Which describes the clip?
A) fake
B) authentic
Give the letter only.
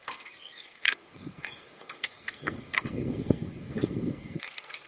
A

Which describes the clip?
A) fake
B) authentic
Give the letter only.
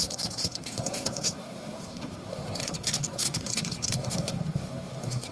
A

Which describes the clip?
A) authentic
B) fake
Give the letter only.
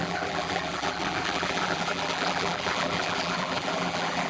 B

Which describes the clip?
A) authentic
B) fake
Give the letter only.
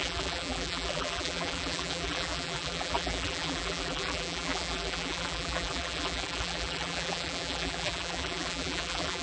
B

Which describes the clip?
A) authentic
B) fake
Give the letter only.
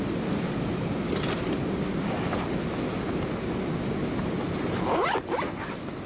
A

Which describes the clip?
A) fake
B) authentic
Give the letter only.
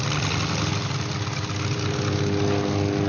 B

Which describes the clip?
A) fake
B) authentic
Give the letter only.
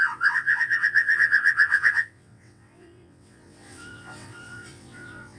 A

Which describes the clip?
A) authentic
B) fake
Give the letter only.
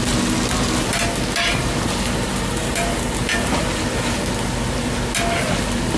A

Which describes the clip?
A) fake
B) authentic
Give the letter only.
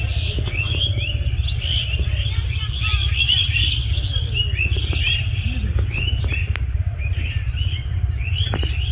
B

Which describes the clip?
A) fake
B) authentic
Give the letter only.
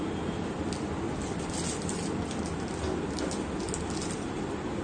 B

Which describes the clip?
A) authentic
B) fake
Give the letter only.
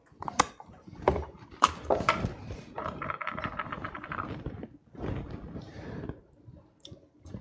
B